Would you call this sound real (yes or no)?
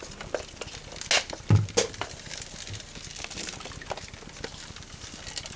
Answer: yes